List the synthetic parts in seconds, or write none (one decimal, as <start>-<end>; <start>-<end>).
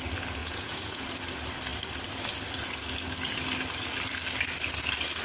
0.4-1.0